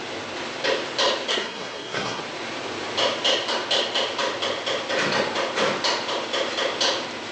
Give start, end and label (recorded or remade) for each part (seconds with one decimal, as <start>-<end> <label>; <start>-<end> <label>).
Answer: 0.0-1.3 recorded; 1.3-2.2 remade; 2.2-7.3 recorded